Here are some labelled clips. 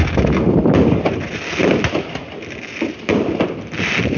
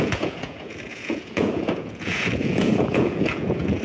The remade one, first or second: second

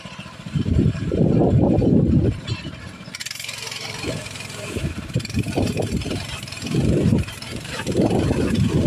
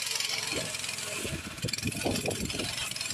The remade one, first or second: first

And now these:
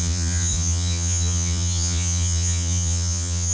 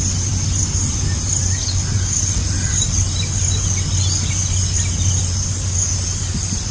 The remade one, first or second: first